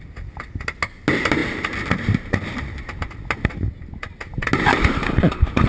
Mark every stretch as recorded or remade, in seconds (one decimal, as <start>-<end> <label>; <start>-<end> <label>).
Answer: 0.0-5.7 recorded